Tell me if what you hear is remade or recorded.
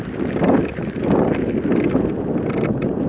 recorded